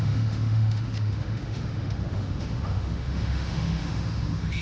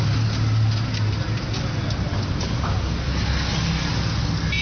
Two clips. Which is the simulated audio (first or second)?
first